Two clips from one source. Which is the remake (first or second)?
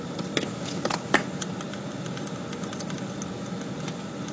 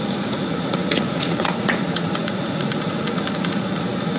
second